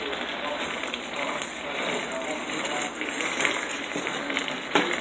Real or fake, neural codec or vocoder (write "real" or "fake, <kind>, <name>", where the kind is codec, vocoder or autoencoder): real